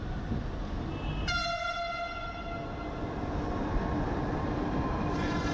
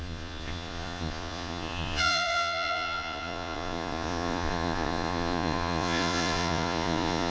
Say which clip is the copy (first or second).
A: second